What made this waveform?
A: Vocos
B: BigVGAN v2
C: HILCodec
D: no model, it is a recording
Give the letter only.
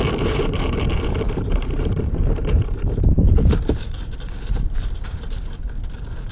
B